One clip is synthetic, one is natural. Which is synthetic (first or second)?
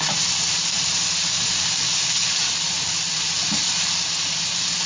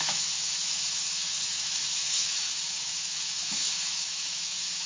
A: second